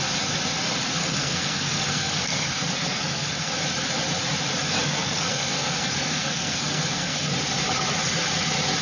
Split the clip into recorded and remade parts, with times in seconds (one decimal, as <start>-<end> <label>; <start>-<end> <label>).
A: 0.0-1.0 recorded; 1.0-3.6 remade; 3.6-4.8 recorded; 4.8-7.3 remade; 7.3-8.8 recorded